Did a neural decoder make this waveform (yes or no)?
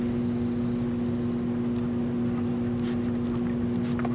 no